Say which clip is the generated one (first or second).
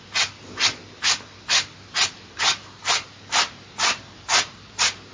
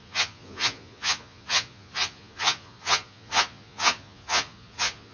second